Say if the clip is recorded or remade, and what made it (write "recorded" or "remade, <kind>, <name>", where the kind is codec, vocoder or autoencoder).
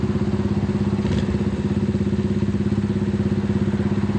recorded